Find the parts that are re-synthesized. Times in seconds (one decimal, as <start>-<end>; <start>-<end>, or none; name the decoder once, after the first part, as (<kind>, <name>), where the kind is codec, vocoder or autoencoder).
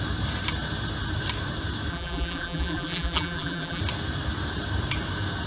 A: 1.9-3.8 (vocoder, BigVGAN v2)